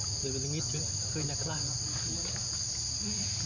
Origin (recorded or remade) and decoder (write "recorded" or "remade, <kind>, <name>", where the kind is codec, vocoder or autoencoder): recorded